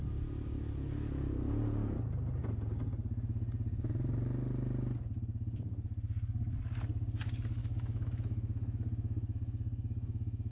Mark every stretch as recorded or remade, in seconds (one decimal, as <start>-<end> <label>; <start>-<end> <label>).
0.0-7.6 recorded; 7.6-10.5 remade